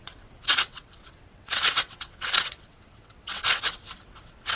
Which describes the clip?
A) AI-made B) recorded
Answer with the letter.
A